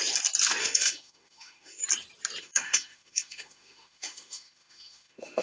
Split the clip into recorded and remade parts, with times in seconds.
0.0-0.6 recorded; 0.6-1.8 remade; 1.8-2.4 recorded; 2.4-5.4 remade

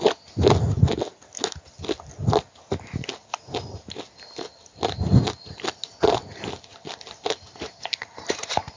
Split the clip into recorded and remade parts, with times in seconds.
0.0-8.8 recorded